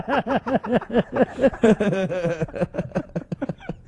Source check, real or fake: fake